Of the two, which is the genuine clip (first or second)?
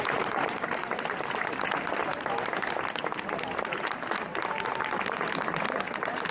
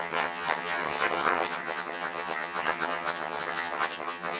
first